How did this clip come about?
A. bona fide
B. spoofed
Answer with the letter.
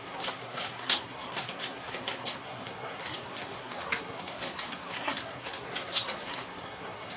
B